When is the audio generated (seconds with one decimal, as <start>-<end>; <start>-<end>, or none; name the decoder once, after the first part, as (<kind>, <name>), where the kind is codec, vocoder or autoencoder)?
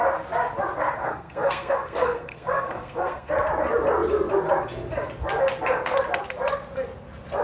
1.0-3.3 (codec, SNAC)